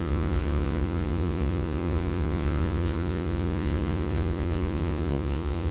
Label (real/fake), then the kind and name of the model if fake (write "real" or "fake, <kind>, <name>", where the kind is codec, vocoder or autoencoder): fake, vocoder, Vocos